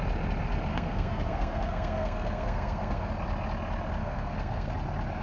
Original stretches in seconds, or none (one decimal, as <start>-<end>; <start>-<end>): 0.0-0.7; 3.1-4.0; 4.7-5.2